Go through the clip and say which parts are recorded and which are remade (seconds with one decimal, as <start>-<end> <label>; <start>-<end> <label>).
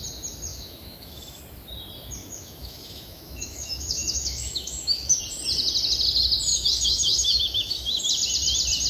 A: 0.0-0.5 recorded; 0.5-1.4 remade; 1.4-2.2 recorded; 2.2-5.2 remade; 5.2-6.5 recorded; 6.5-8.0 remade; 8.0-8.9 recorded